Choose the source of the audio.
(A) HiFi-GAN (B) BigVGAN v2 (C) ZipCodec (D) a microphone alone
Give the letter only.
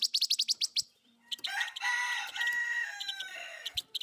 B